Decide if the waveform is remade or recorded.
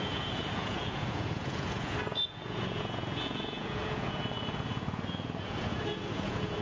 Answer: remade